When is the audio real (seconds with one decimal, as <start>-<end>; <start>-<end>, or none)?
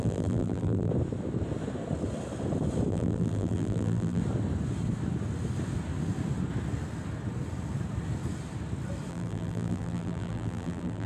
0.9-2.9; 4.2-9.1